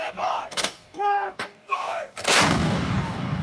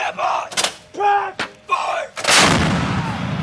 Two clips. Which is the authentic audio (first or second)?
second